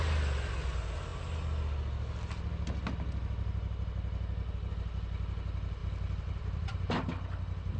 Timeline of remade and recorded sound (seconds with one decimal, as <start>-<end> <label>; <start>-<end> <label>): 0.0-5.8 recorded; 5.8-7.0 remade; 7.0-7.8 recorded